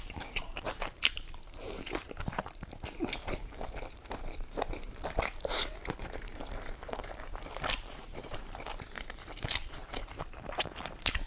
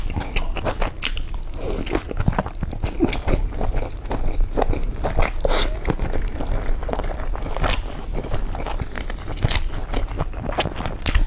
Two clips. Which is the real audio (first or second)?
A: second